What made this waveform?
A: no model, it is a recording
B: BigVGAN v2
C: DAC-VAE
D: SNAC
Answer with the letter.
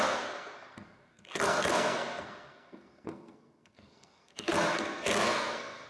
D